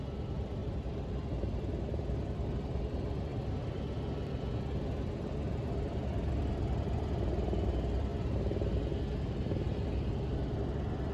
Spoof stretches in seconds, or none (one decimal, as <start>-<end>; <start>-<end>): 0.6-2.8